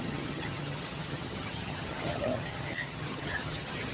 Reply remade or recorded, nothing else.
remade